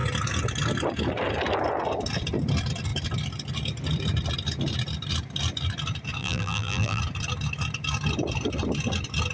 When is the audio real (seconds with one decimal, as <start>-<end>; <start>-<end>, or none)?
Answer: 0.0-6.2; 7.0-9.3

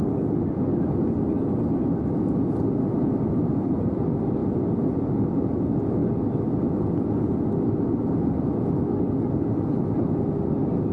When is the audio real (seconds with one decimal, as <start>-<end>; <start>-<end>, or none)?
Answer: 0.0-10.9

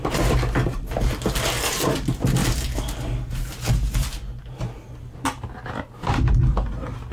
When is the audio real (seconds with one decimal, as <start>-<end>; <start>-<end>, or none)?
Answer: 0.0-7.1

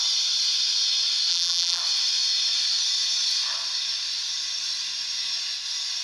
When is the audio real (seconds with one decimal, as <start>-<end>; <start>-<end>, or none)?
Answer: 0.0-1.3; 1.8-6.0